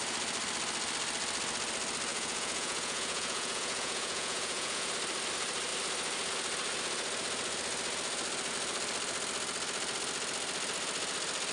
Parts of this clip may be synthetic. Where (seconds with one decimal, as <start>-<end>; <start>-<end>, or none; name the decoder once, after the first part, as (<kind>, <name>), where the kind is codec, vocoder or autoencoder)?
2.1-4.9 (vocoder, Vocos)